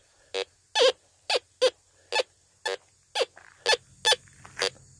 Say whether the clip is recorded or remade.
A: recorded